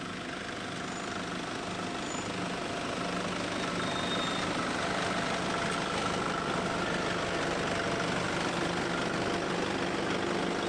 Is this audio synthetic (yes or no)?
no